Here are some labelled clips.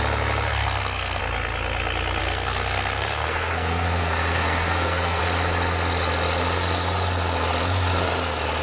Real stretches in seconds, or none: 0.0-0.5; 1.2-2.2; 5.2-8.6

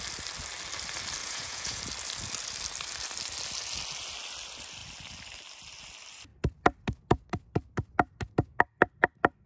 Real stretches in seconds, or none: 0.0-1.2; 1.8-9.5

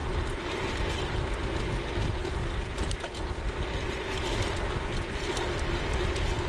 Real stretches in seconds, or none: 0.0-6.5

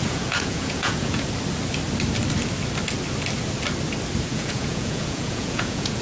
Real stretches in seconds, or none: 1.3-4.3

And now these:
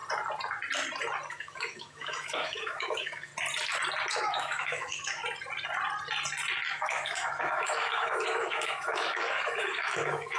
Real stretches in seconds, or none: 0.0-1.3; 3.3-4.1; 5.2-6.7

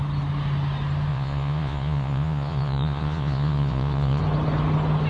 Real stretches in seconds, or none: 0.0-1.1; 4.2-5.1